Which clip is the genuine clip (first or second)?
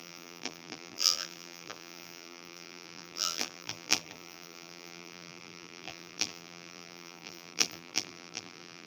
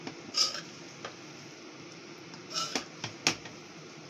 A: second